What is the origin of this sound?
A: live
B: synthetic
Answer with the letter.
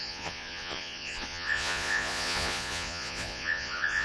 B